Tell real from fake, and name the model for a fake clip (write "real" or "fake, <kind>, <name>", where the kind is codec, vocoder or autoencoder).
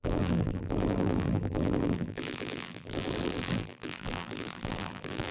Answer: fake, vocoder, BigVGAN v2